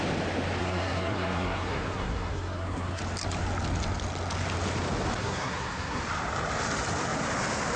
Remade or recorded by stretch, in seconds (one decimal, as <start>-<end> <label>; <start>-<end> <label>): 0.0-0.6 recorded; 0.6-3.0 remade; 3.0-5.2 recorded; 5.2-6.0 remade; 6.0-7.8 recorded